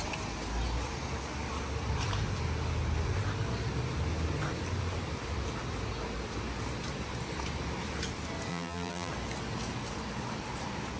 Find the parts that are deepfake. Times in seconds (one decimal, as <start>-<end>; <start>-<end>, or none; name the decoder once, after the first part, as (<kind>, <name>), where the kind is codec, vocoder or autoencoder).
8.5-9.1 (vocoder, BigVGAN v2)

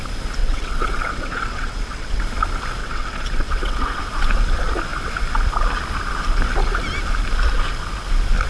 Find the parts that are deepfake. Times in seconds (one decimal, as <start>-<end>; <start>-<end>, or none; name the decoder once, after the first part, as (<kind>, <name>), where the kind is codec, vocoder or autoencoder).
0.4-2.2 (vocoder, WaveNeXt); 2.8-4.0